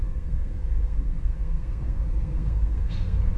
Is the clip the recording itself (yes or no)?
no